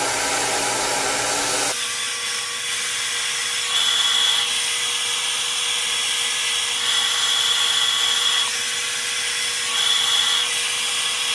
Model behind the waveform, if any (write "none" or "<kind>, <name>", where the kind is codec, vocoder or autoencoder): none